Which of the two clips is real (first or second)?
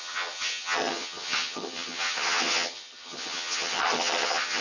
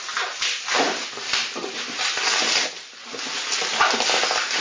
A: second